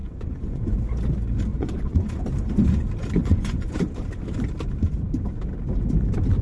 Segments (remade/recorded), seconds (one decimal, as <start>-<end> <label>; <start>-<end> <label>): 0.0-0.8 remade; 0.8-1.5 recorded; 1.5-2.2 remade; 2.2-3.2 recorded; 3.2-3.9 remade; 3.9-6.4 recorded